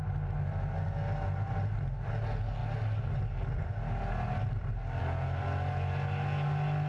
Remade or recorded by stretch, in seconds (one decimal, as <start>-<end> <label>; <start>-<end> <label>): 0.0-6.9 recorded